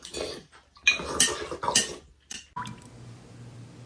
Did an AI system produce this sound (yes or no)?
no